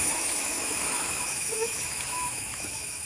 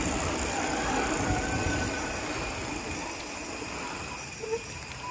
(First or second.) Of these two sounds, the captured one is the second